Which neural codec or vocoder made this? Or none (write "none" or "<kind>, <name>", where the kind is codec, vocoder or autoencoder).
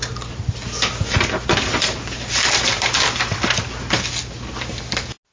none